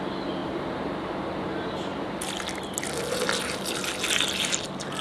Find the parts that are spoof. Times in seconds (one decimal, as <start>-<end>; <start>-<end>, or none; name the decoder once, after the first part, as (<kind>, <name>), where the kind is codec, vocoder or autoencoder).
none